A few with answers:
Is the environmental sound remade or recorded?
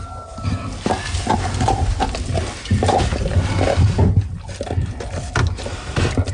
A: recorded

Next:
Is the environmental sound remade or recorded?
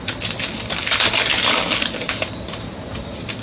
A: recorded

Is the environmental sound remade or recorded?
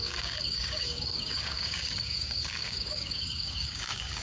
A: remade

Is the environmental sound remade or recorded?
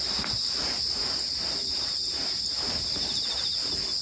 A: recorded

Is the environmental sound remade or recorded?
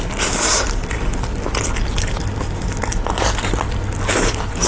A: recorded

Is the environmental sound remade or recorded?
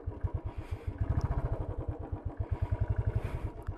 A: recorded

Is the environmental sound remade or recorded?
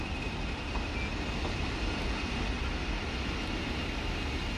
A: recorded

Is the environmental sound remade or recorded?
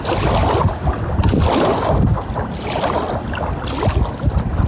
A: recorded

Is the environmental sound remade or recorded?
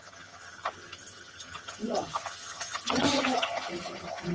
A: remade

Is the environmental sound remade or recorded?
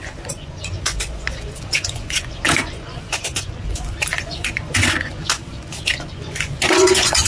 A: remade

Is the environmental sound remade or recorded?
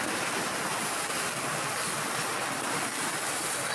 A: recorded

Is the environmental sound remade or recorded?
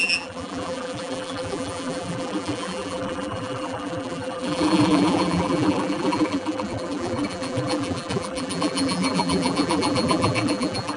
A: remade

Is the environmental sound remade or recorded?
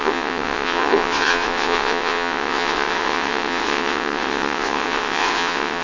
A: remade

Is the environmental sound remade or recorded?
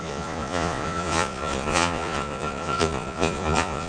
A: remade